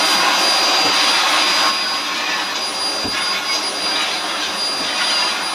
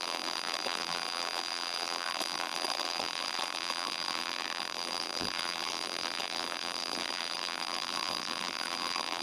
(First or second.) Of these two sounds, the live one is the first